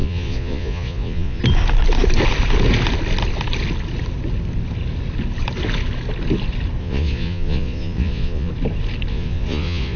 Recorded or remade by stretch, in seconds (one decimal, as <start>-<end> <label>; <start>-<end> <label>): 0.0-1.4 remade; 1.4-6.8 recorded; 6.8-8.5 remade; 8.5-9.1 recorded; 9.1-10.0 remade